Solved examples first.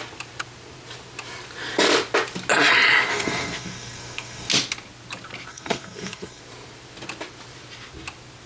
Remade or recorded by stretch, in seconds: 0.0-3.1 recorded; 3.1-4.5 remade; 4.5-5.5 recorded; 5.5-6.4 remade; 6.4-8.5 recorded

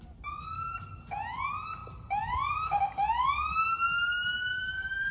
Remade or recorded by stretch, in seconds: 0.0-5.1 recorded

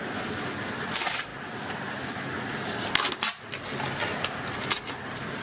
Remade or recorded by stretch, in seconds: 0.0-5.4 recorded

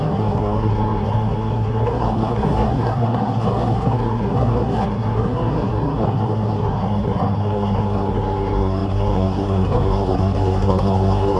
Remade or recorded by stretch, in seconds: 0.0-11.4 remade

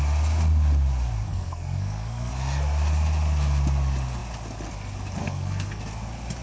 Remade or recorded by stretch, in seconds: 0.0-1.3 recorded; 1.3-2.3 remade; 2.3-5.2 recorded; 5.2-5.8 remade; 5.8-6.4 recorded

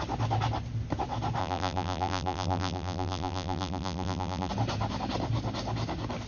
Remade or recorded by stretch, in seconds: 0.0-1.4 recorded; 1.4-4.5 remade; 4.5-6.3 recorded

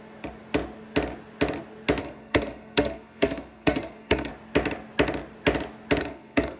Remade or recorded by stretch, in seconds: 0.0-2.0 recorded; 2.0-4.3 remade; 4.3-6.0 recorded; 6.0-6.6 remade

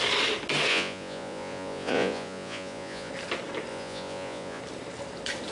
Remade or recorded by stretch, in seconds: 0.0-0.7 recorded; 0.7-3.1 remade; 3.1-3.7 recorded; 3.7-4.6 remade; 4.6-5.5 recorded